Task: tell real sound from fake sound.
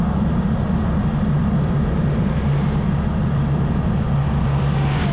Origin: real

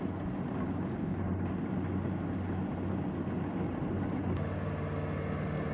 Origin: real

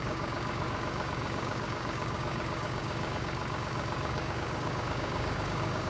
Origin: fake